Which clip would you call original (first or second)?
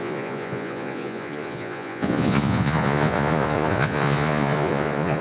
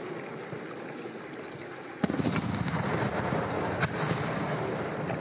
second